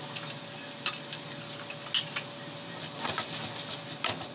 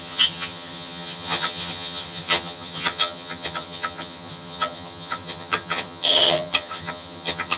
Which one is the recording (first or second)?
first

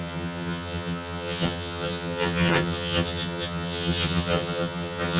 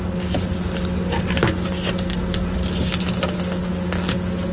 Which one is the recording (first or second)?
second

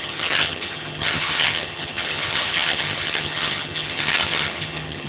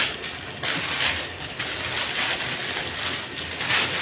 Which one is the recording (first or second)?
second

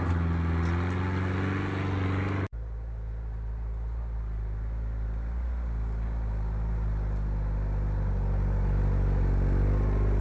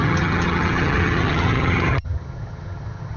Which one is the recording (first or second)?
first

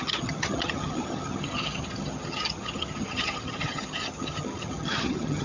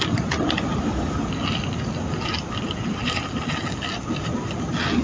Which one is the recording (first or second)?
second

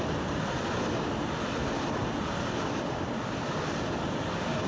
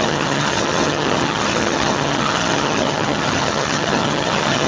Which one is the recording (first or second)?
first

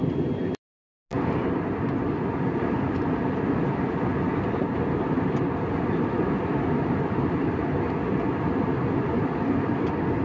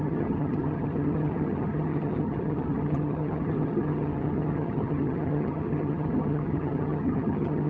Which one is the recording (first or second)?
first